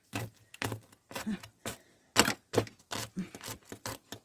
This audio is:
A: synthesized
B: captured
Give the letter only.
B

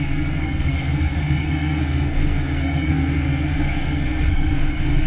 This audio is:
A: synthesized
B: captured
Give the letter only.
A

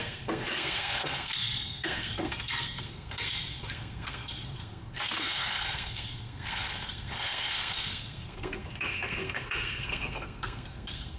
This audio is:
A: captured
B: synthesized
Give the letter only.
B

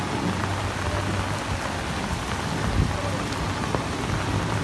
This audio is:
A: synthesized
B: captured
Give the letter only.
B